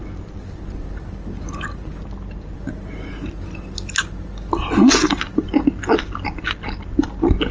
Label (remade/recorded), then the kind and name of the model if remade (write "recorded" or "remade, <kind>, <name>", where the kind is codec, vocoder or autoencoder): recorded